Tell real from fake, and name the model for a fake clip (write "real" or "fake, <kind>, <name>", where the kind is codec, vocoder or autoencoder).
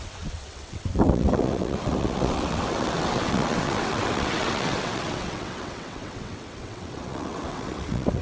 fake, vocoder, WaveNeXt